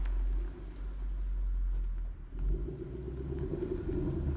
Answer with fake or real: real